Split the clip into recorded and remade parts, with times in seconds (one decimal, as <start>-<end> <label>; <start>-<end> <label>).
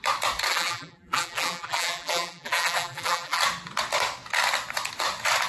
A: 0.0-0.5 recorded; 0.5-3.4 remade; 3.4-5.5 recorded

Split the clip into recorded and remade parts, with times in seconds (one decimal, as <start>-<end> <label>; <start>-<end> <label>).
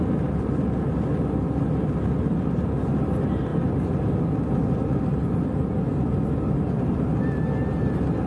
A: 0.0-8.3 recorded